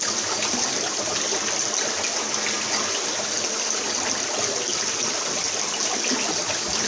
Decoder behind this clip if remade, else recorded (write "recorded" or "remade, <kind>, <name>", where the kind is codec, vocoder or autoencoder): recorded